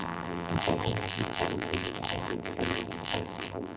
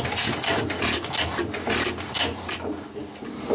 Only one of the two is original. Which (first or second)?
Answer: second